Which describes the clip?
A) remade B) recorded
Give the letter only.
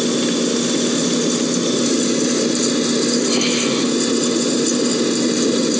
B